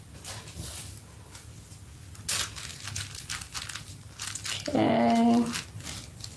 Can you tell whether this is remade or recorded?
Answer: recorded